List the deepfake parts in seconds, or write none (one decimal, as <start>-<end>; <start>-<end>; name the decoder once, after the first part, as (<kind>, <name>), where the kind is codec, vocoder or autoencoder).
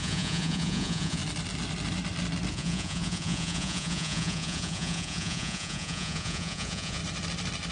0.0-1.2 (vocoder, Vocos); 2.5-7.0